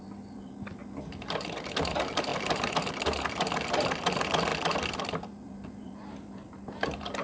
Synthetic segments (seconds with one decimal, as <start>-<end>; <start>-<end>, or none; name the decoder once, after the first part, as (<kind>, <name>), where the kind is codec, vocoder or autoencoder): 0.0-0.8 (vocoder, BigVGAN v2); 1.4-7.2